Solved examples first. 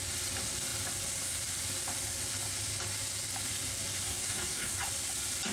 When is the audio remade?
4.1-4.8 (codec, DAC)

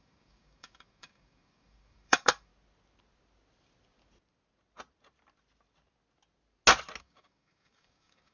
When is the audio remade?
0.0-2.5 (codec, DAC); 7.0-8.3

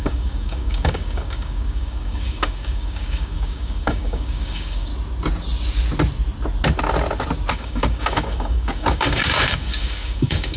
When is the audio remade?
0.0-4.9 (codec, DAC); 7.5-10.6

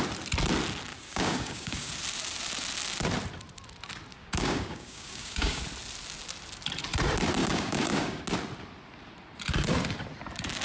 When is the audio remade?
0.9-1.9 (codec, DAC); 4.1-5.6; 7.4-8.2

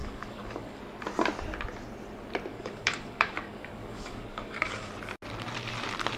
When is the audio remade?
0.0-0.8 (codec, DAC); 2.5-4.9

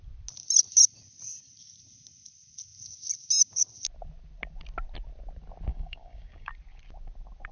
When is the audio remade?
5.7-6.5 (codec, DAC)